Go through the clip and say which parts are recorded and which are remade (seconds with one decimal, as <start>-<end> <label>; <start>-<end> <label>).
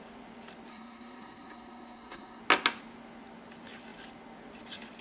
0.0-0.7 recorded; 0.7-2.4 remade; 2.4-5.0 recorded